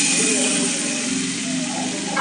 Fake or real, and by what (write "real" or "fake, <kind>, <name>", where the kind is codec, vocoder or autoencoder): real